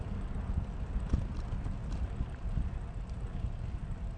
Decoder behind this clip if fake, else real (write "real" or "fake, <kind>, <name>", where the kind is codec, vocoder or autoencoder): real